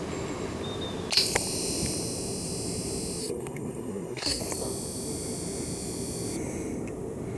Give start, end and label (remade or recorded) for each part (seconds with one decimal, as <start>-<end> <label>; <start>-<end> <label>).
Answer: 0.0-3.2 recorded; 3.2-4.4 remade; 4.4-7.4 recorded